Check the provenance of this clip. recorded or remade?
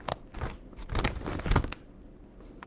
recorded